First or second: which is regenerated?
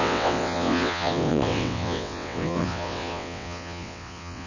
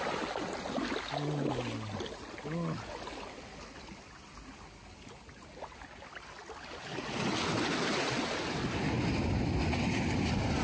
first